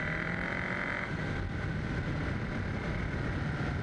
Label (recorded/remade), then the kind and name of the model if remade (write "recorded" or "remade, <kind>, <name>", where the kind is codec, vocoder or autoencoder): recorded